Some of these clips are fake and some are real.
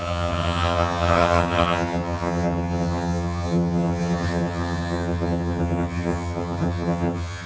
fake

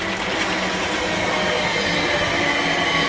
real